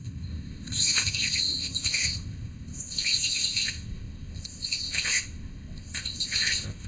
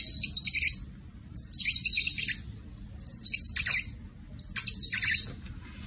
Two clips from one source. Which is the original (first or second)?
second